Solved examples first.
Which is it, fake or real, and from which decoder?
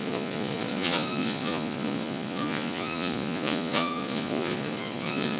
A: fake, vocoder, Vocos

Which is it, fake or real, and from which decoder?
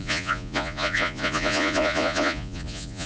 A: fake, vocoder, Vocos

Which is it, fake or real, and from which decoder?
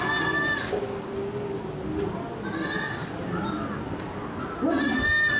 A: real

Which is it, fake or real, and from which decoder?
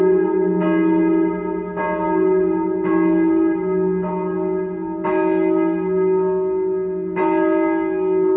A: real